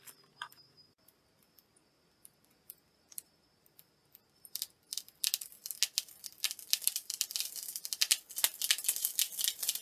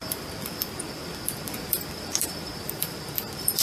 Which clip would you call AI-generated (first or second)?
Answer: second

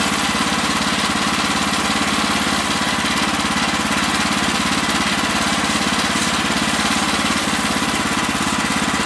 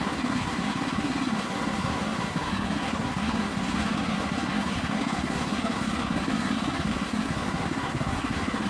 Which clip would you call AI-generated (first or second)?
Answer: second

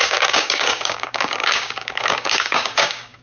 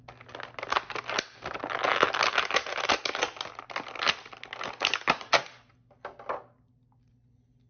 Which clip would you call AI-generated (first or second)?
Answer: first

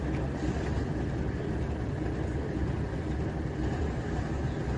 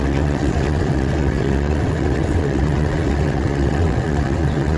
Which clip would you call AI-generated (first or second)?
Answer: second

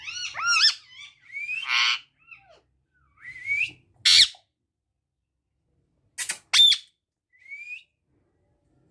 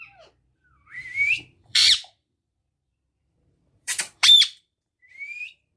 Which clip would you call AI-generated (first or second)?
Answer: second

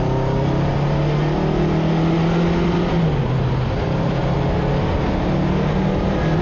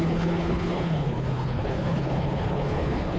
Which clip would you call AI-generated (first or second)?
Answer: second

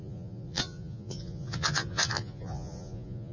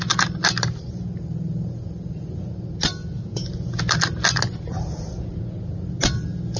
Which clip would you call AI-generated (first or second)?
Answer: first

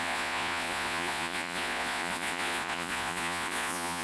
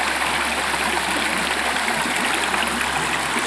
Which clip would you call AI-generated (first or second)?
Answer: first